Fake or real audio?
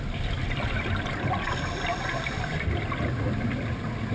real